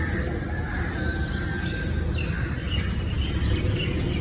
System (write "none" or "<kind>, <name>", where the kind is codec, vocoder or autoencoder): none